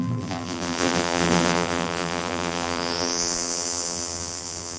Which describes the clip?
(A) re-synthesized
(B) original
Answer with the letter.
A